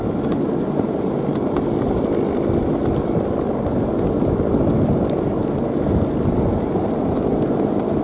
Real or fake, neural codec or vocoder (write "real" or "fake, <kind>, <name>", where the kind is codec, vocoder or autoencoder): real